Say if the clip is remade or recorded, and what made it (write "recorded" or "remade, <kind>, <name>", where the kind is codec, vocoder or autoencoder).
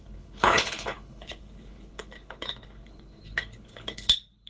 remade, codec, HILCodec